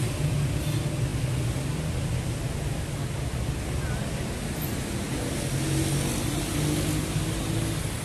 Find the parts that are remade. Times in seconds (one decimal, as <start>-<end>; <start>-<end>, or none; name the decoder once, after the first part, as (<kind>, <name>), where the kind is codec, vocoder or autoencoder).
none